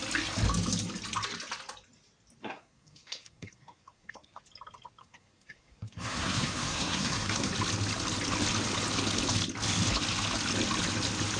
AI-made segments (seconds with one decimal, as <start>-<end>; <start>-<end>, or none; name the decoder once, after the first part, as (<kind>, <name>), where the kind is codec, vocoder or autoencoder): 2.4-4.4 (codec, SNAC); 5.0-7.5